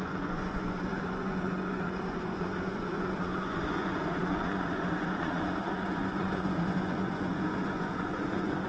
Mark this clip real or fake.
fake